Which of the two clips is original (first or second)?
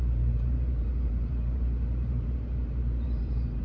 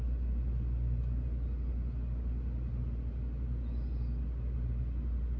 second